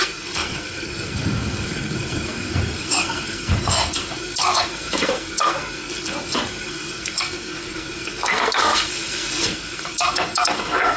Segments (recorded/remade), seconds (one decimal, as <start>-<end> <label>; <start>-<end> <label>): 0.0-11.0 remade